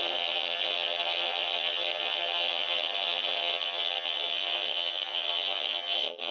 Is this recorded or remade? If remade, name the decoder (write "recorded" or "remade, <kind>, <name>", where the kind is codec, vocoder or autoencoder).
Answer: remade, vocoder, HiFi-GAN